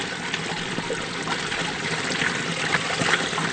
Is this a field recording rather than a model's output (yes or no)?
yes